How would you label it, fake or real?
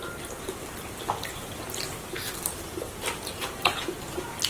fake